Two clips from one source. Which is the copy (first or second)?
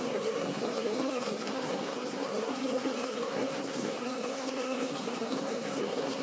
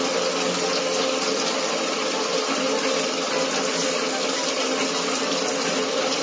first